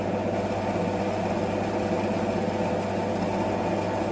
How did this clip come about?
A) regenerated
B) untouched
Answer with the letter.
B